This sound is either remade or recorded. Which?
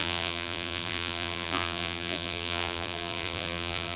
remade